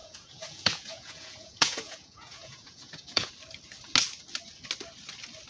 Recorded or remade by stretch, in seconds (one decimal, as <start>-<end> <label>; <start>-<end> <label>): 0.0-3.3 remade; 3.3-5.5 recorded